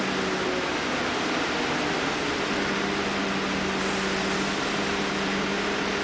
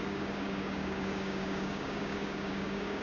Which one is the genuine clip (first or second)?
first